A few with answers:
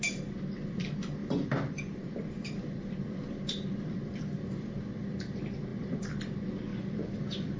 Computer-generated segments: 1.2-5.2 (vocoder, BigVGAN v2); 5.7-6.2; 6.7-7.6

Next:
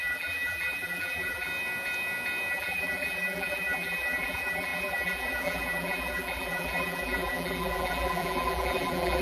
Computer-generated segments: 0.0-1.5 (vocoder, BigVGAN v2); 2.5-9.2

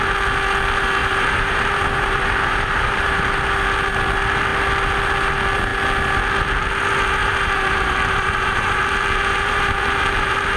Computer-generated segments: 1.0-3.3 (vocoder, BigVGAN v2); 7.2-10.6